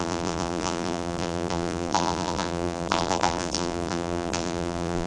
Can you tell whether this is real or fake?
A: fake